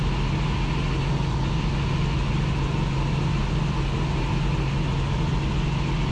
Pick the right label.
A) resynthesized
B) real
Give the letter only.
B